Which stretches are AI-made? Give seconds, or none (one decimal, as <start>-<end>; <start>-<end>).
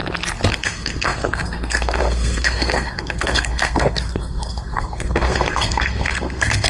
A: 0.5-6.7